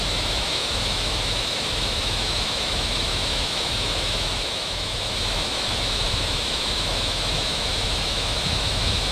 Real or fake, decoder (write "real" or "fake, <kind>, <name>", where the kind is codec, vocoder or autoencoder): fake, autoencoder, DAC-VAE